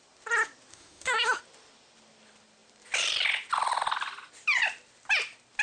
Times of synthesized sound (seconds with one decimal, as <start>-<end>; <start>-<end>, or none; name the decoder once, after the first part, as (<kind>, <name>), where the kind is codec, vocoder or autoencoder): 0.7-1.4 (autoencoder, DAC-VAE)